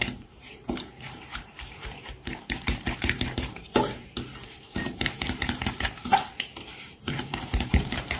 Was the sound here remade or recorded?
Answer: remade